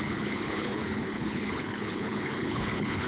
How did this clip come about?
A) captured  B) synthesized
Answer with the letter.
B